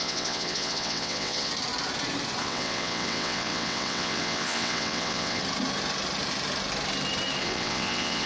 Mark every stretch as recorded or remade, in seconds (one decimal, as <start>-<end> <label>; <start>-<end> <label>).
0.0-1.5 remade; 1.5-2.4 recorded; 2.4-5.4 remade; 5.4-7.4 recorded; 7.4-8.3 remade